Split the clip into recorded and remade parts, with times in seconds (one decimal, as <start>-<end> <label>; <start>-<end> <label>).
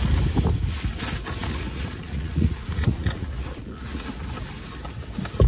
0.0-1.4 recorded; 1.4-4.1 remade; 4.1-5.5 recorded